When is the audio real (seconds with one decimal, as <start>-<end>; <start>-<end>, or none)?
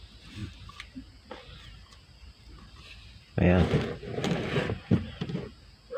0.0-6.0